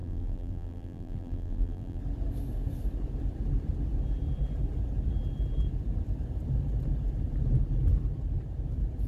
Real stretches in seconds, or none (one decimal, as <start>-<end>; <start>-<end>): 2.0-9.1